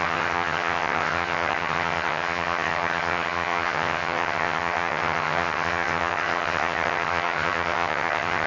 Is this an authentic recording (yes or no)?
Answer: no